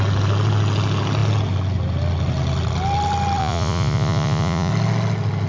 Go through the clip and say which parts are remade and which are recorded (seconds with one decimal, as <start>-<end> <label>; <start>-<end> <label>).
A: 0.0-3.4 recorded; 3.4-4.7 remade; 4.7-5.5 recorded